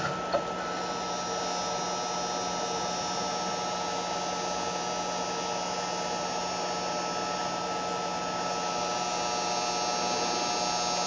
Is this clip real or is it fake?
real